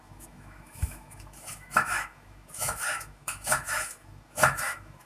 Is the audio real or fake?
fake